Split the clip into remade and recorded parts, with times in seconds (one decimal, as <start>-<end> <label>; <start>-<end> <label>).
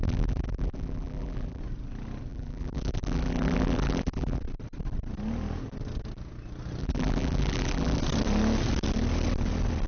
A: 0.0-1.6 remade; 1.6-2.3 recorded; 2.3-4.4 remade; 4.4-6.8 recorded; 6.8-8.0 remade; 8.0-9.9 recorded